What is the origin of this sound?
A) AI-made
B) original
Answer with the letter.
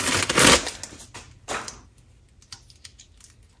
B